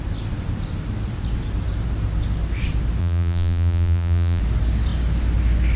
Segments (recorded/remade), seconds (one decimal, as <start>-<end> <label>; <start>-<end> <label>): 0.0-3.0 recorded; 3.0-4.4 remade; 4.4-5.8 recorded